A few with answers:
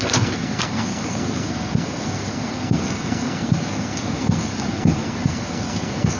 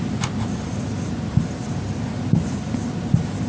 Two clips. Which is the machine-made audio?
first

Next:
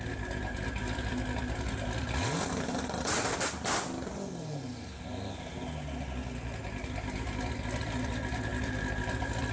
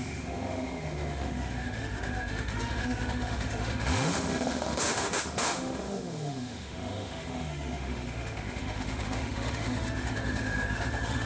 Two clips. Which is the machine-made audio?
second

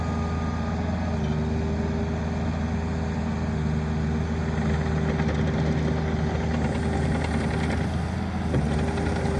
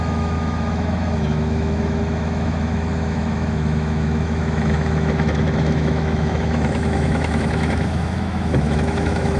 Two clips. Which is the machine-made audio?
second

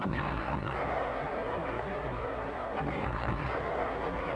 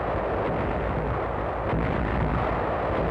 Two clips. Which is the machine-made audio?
first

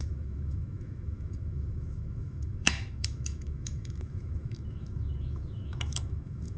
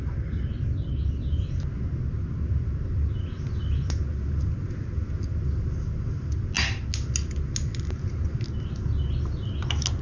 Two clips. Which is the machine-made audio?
first